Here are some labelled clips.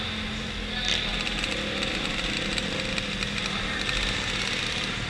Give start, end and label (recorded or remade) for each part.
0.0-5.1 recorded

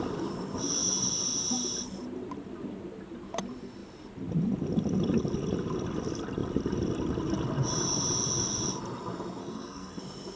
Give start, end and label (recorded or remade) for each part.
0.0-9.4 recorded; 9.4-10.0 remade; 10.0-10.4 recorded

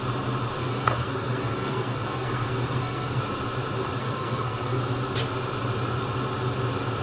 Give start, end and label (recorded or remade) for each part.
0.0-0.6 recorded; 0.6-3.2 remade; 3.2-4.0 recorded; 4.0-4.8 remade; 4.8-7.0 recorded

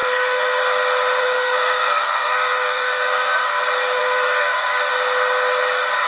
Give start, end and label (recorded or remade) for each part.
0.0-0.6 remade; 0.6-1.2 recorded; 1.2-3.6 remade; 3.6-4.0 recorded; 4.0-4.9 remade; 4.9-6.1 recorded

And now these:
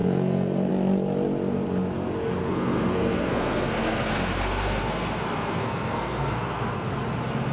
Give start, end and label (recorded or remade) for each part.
0.0-0.7 remade; 0.7-2.4 recorded; 2.4-6.9 remade; 6.9-7.5 recorded

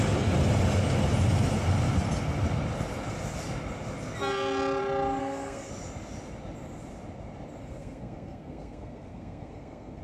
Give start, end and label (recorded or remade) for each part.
0.0-5.2 recorded; 5.2-5.7 remade; 5.7-7.6 recorded; 7.6-10.0 remade

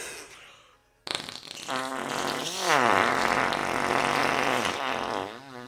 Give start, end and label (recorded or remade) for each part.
0.0-5.7 recorded